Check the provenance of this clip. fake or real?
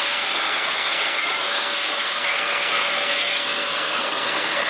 fake